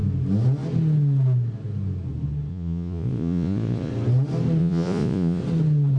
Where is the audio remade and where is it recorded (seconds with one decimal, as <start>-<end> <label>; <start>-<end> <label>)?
0.0-2.5 recorded; 2.5-3.9 remade; 3.9-4.6 recorded; 4.6-5.4 remade; 5.4-6.0 recorded